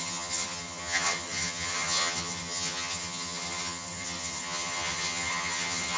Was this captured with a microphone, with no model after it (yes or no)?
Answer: no